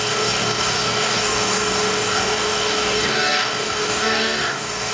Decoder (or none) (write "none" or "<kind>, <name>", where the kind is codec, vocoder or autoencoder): codec, DAC